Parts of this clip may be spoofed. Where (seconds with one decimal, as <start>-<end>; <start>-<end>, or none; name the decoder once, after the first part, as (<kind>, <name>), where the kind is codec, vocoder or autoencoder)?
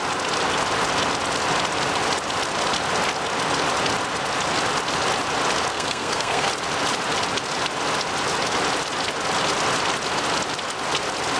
5.7-6.5 (codec, SNAC)